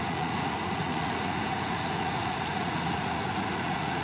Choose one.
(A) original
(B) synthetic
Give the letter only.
B